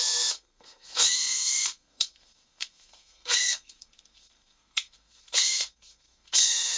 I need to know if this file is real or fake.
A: fake